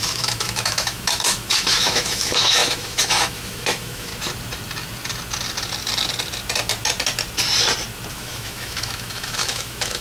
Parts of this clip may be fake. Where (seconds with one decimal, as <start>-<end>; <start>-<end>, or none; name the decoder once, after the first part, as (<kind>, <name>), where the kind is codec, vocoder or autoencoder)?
0.0-4.1 (autoencoder, DAC-VAE); 8.1-10.0